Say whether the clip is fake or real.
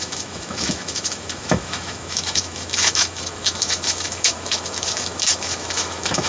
fake